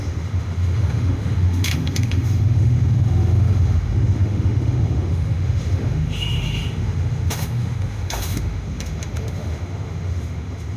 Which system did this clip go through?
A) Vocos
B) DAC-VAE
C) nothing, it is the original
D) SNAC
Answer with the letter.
B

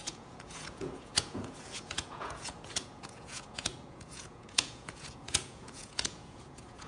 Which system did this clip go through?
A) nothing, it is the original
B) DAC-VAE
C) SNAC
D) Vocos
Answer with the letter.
D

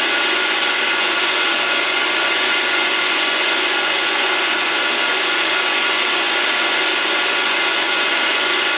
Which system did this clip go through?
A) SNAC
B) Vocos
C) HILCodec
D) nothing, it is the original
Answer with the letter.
B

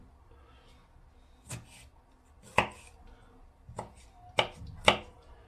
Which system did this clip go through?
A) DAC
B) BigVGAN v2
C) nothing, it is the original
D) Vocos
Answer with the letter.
C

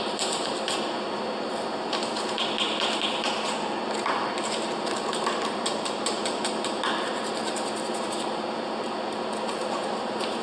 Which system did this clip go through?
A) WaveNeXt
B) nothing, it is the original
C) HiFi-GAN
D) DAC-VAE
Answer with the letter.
B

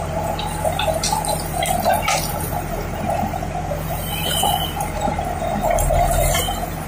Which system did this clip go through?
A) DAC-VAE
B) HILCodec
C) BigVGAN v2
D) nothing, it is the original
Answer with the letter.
D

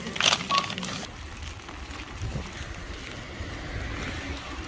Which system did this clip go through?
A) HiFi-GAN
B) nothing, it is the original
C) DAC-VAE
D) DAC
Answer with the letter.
B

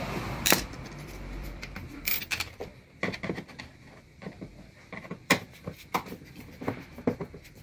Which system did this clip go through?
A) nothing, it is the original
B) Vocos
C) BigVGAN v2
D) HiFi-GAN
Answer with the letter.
C